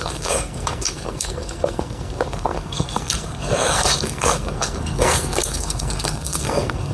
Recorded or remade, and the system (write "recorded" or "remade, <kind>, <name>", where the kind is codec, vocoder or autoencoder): remade, codec, SNAC